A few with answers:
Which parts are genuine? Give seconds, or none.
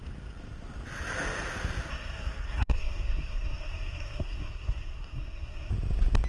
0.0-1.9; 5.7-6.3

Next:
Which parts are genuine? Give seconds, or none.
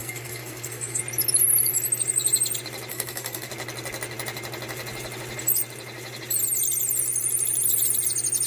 1.0-2.9; 3.5-8.5